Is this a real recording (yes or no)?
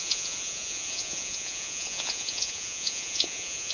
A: no